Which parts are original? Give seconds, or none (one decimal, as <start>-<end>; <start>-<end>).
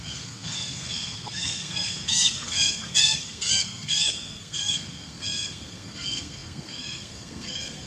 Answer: none